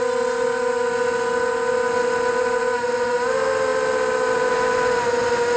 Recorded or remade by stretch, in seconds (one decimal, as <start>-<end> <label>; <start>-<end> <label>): 0.0-5.6 recorded